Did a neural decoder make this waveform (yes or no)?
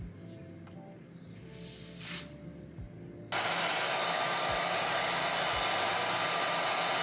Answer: no